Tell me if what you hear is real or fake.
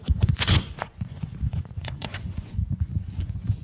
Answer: fake